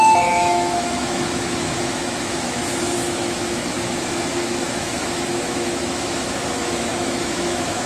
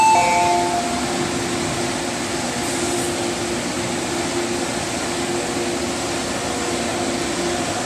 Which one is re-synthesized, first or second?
first